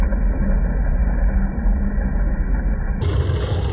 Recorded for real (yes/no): yes